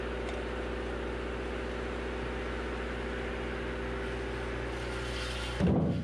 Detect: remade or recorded recorded